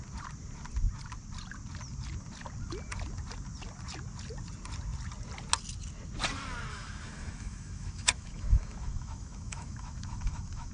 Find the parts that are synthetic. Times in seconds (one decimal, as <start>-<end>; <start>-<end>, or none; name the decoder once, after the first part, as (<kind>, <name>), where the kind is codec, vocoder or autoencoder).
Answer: 6.7-10.7 (autoencoder, DAC-VAE)